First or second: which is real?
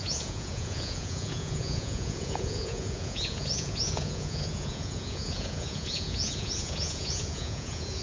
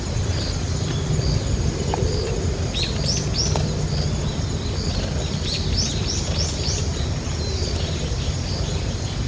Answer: second